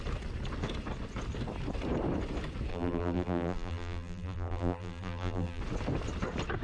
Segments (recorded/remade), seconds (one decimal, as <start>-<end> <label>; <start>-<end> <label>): 0.0-2.7 recorded; 2.7-5.6 remade; 5.6-6.6 recorded

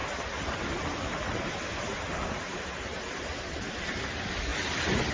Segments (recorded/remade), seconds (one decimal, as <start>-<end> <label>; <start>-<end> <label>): 0.0-4.5 recorded; 4.5-5.1 remade

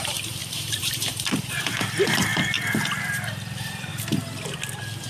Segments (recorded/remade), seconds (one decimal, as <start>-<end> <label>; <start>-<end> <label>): 0.0-2.3 remade; 2.3-3.0 recorded; 3.0-3.9 remade; 3.9-5.1 recorded

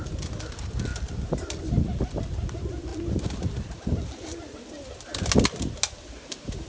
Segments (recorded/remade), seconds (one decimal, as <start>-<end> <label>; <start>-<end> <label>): 0.0-0.9 recorded; 0.9-1.6 remade; 1.6-6.7 recorded

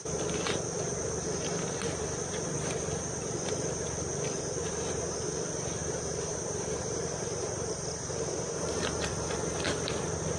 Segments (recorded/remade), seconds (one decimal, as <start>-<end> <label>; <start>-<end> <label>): 0.0-5.8 recorded; 5.8-9.1 remade; 9.1-10.4 recorded